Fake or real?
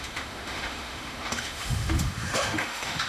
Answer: fake